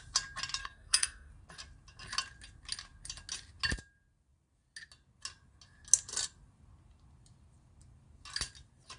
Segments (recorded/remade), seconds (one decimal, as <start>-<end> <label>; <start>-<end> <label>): 0.0-0.6 recorded; 0.6-1.3 remade; 1.3-9.0 recorded